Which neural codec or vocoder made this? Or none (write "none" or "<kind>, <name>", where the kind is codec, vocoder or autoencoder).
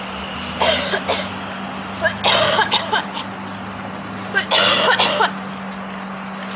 none